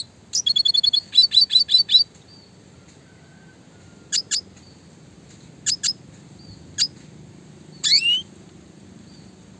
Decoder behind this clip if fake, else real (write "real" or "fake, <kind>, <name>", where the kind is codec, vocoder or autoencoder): real